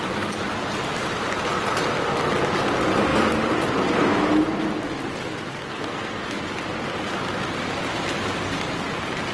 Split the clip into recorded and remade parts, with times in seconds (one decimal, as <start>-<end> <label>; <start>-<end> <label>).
0.0-5.5 recorded; 5.5-6.4 remade; 6.4-9.3 recorded